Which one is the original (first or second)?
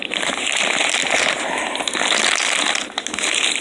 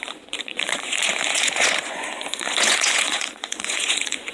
first